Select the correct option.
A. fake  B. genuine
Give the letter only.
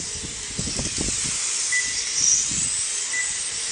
B